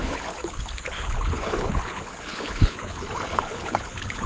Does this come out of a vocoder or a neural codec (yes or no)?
yes